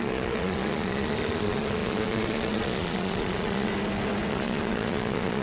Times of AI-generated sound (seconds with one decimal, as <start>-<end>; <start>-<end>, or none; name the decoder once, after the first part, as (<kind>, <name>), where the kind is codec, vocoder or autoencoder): 0.0-3.7 (vocoder, Vocos); 4.3-5.4

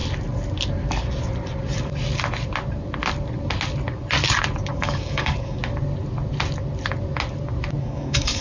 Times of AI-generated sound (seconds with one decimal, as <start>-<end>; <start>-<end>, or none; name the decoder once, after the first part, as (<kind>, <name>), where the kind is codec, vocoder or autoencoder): 4.7-5.6 (codec, DAC); 7.8-8.4

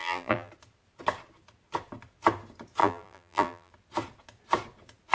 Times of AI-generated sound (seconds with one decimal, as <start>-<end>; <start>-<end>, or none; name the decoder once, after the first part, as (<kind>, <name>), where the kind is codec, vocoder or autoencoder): 0.0-0.5 (vocoder, BigVGAN v2); 2.8-3.7

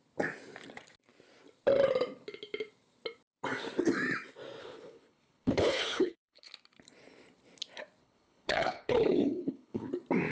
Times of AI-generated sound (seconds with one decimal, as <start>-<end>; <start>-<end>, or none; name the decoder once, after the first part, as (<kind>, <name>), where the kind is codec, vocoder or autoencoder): 4.6-6.5 (codec, HILCodec); 8.0-9.9

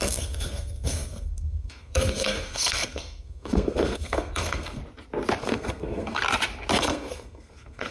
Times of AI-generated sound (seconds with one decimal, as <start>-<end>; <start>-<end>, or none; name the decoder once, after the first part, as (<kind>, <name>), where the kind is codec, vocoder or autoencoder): 0.0-4.8 (codec, SNAC); 5.4-6.2; 6.8-7.9